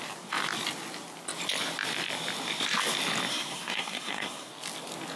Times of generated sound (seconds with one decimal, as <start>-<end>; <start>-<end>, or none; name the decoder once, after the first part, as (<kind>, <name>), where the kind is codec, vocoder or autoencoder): 3.3-4.5 (codec, SNAC)

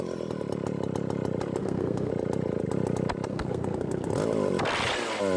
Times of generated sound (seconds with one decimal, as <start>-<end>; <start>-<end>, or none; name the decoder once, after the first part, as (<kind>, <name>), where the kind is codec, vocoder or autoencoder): 1.6-2.1 (codec, SNAC); 3.3-4.1

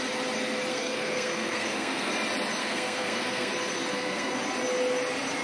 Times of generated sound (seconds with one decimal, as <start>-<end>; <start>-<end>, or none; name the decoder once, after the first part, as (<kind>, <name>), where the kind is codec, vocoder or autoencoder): 0.7-2.1 (codec, SNAC); 2.6-3.5; 3.9-4.4

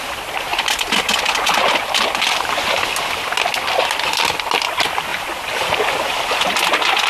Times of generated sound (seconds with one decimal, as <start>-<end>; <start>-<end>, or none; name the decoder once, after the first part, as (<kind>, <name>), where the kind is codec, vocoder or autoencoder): none

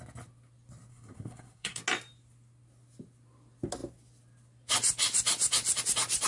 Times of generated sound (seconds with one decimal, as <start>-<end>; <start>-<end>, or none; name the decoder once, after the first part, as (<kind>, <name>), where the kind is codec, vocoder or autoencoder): 0.9-1.8 (codec, SNAC)

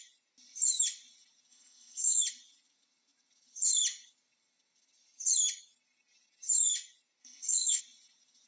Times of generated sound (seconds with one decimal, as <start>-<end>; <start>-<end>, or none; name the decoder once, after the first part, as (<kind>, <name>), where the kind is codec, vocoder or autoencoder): 1.5-2.2 (codec, SNAC); 7.2-7.8